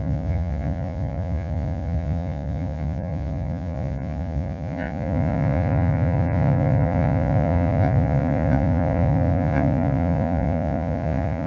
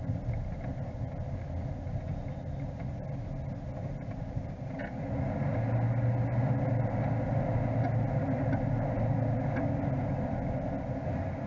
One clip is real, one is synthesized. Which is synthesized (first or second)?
first